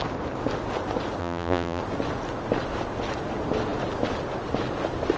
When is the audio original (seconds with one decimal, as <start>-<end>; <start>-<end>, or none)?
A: 0.0-1.2; 1.8-5.2

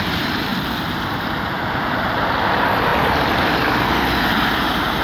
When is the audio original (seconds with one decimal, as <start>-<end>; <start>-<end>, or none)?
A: 0.5-1.1; 2.9-4.2

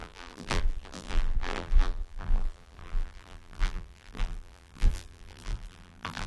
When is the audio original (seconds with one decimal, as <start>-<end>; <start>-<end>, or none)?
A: none

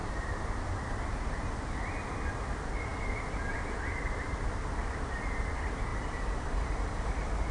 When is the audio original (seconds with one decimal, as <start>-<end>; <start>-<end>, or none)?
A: 0.0-5.9

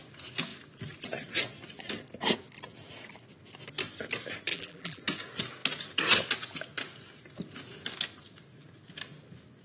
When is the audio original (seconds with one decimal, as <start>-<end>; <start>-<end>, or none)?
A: 0.0-4.5; 5.0-9.6

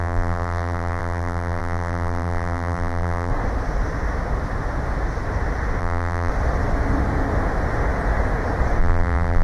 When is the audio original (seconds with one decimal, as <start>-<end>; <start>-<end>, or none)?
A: 3.3-5.8; 6.3-8.8

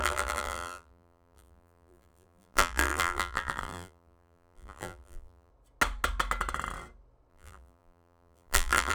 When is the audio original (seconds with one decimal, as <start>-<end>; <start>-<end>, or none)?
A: 5.5-7.3